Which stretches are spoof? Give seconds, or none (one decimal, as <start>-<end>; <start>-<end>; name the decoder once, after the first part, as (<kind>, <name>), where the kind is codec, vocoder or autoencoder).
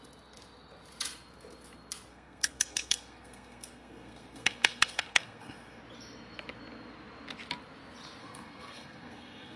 2.1-5.8 (codec, SNAC); 8.2-9.6